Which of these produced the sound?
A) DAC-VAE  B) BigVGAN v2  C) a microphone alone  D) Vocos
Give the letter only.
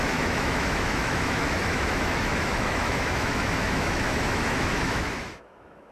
A